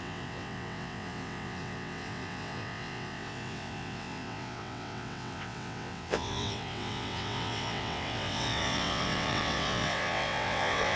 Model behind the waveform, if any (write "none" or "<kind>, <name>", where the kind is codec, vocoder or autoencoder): vocoder, WaveNeXt